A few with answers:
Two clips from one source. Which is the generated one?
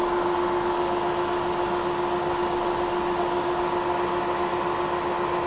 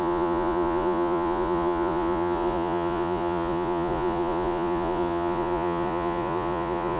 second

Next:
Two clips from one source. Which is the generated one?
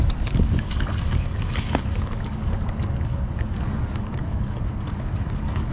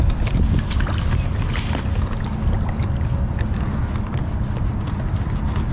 first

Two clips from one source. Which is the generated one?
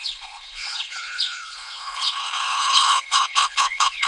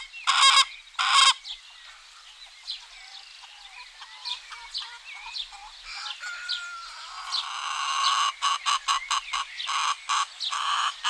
first